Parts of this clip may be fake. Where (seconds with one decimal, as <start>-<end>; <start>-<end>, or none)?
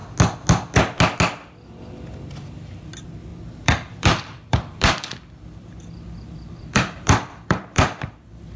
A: 3.3-8.6